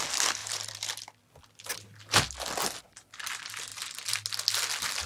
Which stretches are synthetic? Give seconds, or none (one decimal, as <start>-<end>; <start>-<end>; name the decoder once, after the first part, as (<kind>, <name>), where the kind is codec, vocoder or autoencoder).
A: none